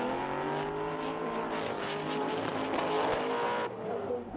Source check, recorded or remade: recorded